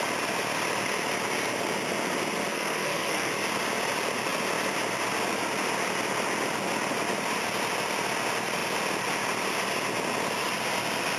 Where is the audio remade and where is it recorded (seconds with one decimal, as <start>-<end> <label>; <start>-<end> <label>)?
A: 0.0-2.5 recorded; 2.5-3.3 remade; 3.3-11.2 recorded